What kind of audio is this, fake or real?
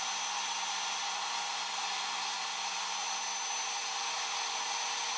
real